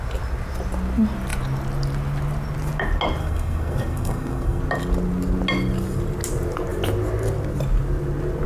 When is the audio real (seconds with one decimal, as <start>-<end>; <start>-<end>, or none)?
0.0-3.2; 4.6-8.5